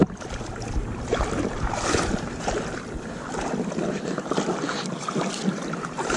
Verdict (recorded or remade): remade